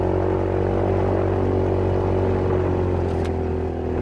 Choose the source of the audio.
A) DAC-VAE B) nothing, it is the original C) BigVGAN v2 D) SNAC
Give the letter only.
B